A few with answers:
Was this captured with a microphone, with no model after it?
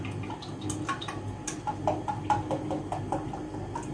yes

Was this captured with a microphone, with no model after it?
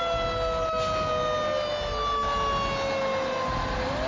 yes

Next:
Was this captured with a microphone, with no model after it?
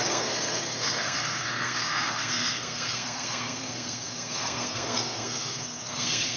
no